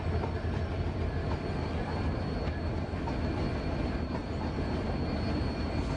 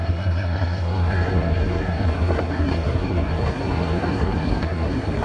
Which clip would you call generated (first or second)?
second